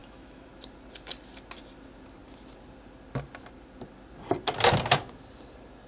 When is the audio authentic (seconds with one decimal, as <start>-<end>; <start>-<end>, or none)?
0.5-5.9